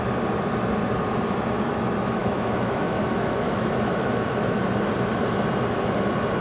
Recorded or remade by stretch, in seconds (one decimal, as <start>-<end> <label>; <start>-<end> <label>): 0.0-2.2 recorded; 2.2-4.6 remade; 4.6-6.4 recorded